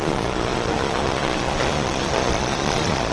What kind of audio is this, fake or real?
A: fake